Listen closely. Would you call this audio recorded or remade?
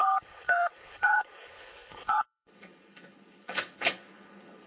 remade